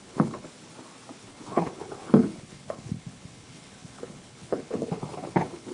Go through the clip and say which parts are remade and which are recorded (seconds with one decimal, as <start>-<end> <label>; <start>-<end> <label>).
0.0-0.5 remade; 0.5-1.2 recorded; 1.2-5.7 remade